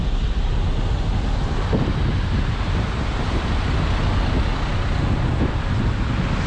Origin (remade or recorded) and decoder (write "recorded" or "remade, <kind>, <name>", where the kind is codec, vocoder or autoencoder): recorded